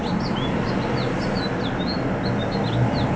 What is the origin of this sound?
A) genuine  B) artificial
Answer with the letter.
A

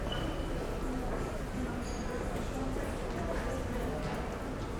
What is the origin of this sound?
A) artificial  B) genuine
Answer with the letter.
B